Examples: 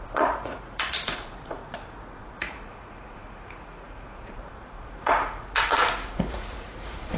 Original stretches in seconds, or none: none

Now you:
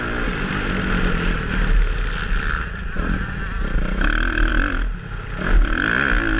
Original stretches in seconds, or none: 0.0-2.8; 3.4-6.4

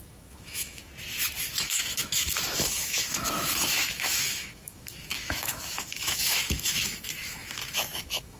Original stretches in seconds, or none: 0.9-1.5